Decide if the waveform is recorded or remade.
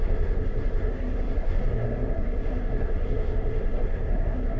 remade